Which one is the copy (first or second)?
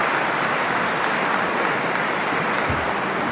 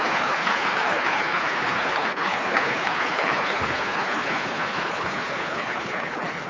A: second